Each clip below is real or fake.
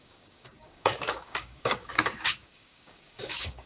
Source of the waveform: fake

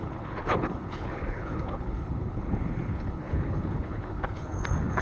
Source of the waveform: fake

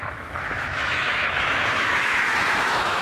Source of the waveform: fake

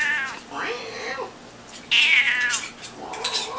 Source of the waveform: real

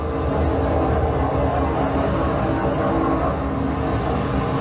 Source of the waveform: real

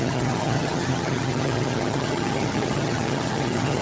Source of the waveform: fake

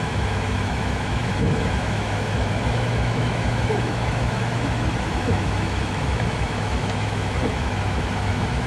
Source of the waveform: fake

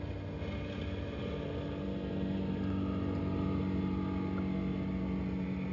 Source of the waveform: real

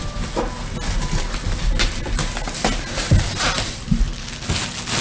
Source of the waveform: real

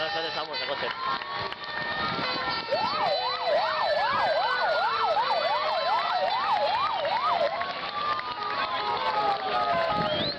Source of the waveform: real